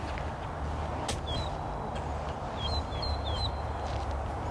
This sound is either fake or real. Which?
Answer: real